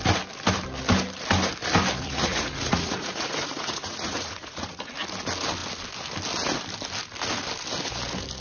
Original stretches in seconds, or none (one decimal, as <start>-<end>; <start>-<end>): 0.0-2.0; 4.9-8.4